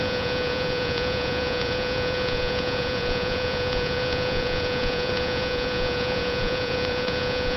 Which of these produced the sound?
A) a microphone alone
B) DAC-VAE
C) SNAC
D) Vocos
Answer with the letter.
D